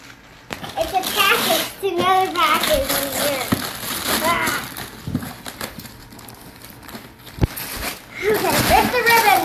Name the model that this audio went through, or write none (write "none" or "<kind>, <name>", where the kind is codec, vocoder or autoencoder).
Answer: none